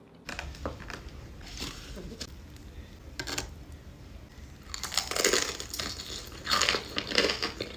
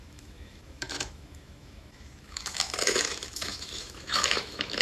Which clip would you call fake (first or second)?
second